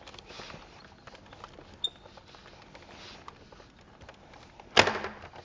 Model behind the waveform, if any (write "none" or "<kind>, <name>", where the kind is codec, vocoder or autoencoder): none